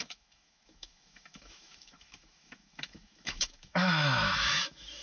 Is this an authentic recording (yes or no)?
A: no